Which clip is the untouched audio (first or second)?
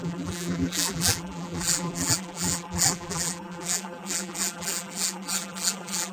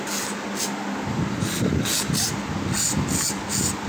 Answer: second